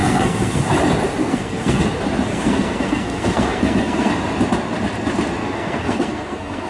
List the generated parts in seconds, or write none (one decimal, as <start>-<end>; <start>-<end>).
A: 0.0-0.6; 1.2-1.8; 2.3-4.1; 5.4-6.7